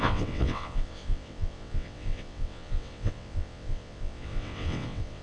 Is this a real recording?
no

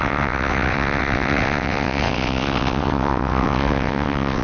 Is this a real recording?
no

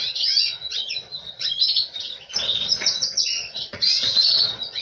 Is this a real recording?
no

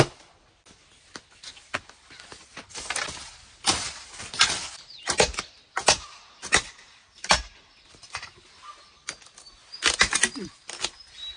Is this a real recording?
yes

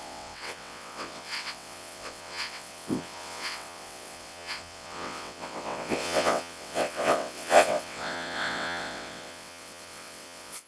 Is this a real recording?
no